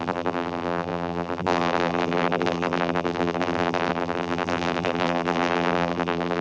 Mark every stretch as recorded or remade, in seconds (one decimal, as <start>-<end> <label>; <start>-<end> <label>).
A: 0.0-6.4 remade